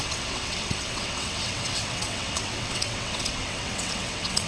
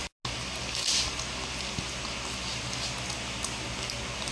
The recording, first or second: second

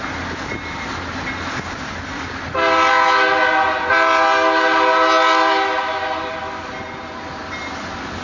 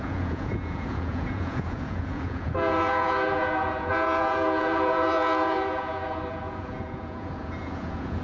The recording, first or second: first